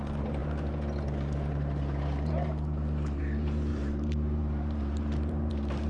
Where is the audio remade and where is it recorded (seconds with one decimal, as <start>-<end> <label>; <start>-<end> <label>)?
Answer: 0.0-3.7 recorded; 3.7-5.5 remade; 5.5-5.9 recorded